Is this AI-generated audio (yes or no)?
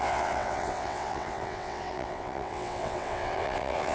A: yes